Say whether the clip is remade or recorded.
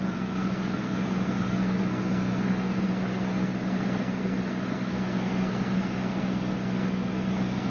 remade